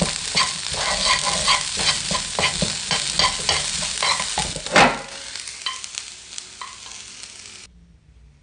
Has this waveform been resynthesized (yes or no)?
no